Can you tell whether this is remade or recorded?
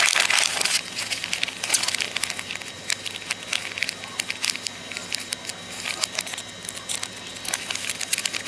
recorded